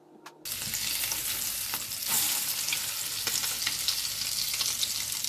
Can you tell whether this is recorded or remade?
recorded